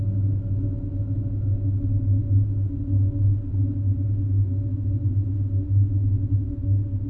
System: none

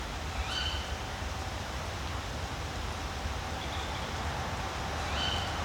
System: none